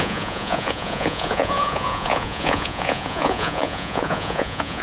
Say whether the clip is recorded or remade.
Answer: remade